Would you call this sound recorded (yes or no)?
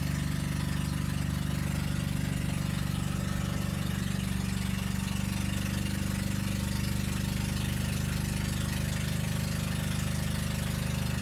yes